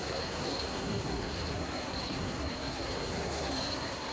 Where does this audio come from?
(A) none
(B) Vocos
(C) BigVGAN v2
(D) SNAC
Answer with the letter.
D